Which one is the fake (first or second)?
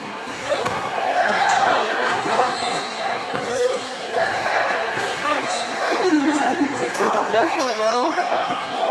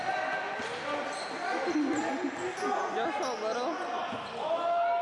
first